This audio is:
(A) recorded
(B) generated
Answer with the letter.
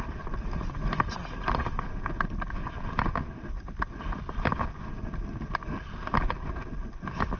A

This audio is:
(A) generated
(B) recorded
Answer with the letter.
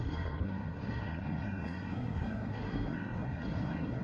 A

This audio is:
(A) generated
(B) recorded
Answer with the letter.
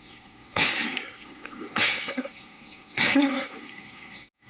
A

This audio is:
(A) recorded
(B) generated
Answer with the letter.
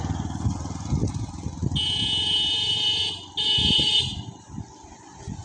A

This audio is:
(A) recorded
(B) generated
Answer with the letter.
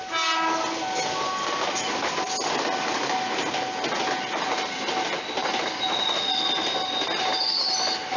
A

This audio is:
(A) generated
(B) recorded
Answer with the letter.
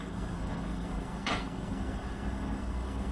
A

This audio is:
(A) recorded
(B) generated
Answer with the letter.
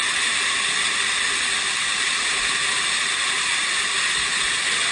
A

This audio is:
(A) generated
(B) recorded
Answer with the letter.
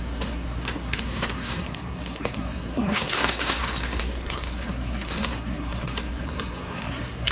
A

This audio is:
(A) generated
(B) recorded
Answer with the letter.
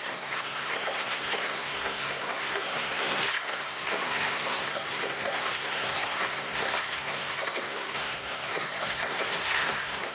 A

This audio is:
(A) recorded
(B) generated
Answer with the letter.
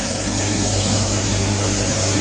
B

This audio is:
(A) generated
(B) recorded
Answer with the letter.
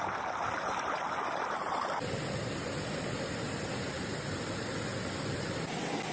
B